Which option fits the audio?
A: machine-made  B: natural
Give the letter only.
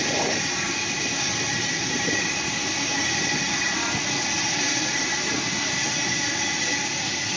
B